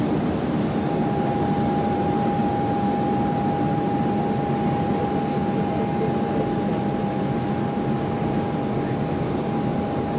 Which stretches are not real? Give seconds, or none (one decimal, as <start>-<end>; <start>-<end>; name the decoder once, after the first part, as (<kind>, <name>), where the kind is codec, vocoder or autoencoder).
none